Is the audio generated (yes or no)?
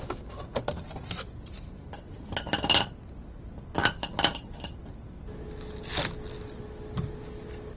no